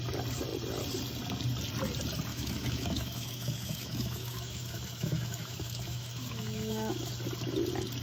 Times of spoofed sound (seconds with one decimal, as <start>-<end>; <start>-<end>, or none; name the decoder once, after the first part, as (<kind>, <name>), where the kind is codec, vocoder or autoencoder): 2.3-7.1 (autoencoder, DAC-VAE)

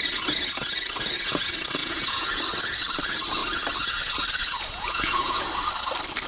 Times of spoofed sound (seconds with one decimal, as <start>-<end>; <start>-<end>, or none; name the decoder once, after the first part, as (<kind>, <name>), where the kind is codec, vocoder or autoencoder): 1.8-2.4 (vocoder, Vocos); 4.4-5.5